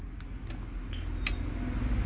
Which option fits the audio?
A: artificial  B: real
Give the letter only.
B